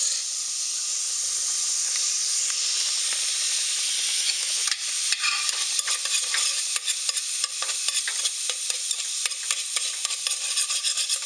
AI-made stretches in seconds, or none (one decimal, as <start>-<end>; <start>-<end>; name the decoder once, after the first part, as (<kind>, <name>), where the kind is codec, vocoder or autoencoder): 4.1-4.7 (autoencoder, DAC-VAE)